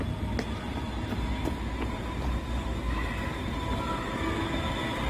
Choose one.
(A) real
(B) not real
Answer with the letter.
A